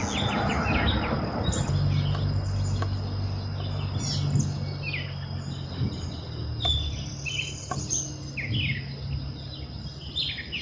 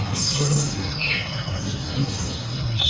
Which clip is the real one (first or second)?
first